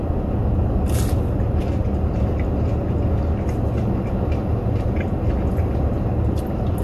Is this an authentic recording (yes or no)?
yes